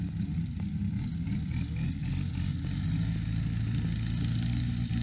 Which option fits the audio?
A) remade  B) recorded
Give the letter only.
B